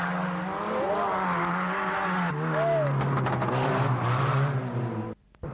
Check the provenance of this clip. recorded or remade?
recorded